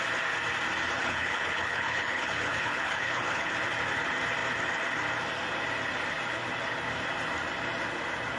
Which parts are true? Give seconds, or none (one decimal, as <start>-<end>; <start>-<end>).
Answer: 0.0-1.0; 3.5-8.4